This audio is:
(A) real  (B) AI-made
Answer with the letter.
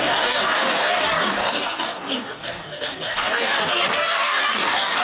B